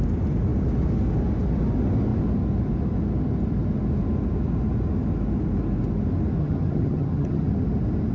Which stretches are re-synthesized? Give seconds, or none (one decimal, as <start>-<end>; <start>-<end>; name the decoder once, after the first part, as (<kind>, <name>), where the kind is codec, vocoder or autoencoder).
6.4-7.5 (vocoder, HiFi-GAN)